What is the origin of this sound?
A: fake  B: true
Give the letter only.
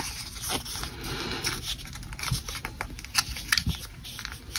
B